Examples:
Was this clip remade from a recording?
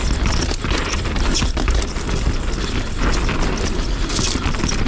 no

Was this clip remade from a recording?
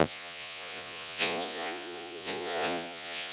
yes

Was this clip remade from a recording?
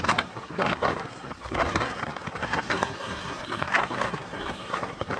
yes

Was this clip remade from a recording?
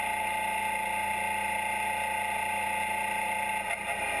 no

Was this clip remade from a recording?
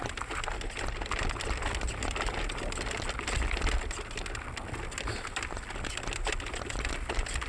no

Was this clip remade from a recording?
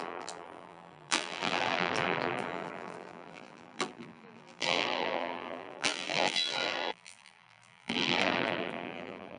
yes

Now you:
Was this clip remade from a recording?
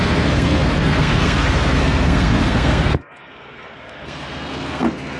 yes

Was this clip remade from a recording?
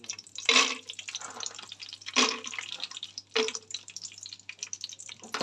no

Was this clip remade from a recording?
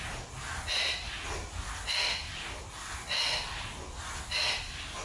no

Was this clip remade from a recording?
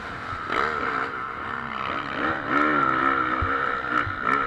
no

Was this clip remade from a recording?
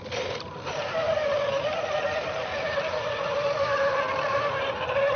no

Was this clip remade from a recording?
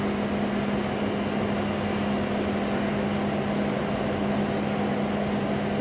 no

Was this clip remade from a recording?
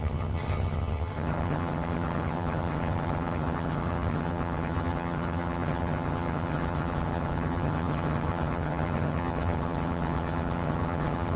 yes